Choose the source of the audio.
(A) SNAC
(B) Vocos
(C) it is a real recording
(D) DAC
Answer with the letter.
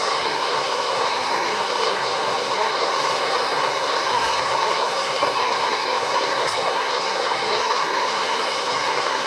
A